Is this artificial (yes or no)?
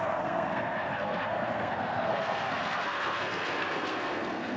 yes